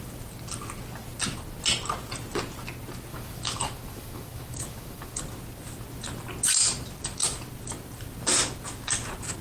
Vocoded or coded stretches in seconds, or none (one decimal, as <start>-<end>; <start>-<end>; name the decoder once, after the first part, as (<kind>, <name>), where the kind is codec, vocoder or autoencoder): 3.1-5.2 (autoencoder, DAC-VAE)